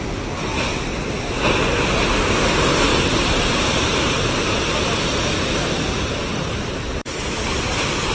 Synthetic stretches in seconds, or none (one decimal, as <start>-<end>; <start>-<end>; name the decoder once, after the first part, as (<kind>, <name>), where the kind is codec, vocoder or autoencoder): 2.9-7.2 (vocoder, BigVGAN v2)